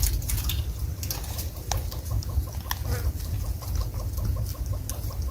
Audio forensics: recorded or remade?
recorded